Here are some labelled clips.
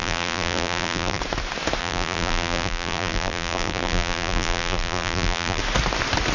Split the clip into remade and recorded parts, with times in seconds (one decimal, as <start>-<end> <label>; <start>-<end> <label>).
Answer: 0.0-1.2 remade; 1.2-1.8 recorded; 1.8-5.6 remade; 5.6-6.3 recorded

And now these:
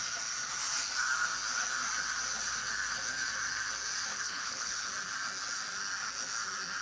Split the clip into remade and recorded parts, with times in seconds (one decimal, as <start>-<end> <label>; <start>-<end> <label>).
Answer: 0.0-4.1 recorded; 4.1-4.9 remade; 4.9-6.8 recorded

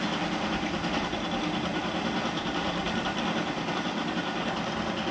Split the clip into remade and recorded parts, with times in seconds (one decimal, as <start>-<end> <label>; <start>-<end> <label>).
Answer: 0.0-5.1 recorded